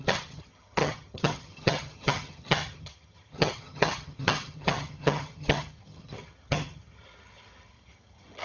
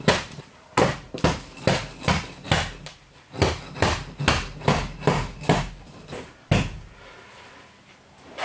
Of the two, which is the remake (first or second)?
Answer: first